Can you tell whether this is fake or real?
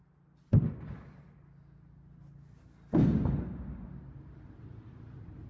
real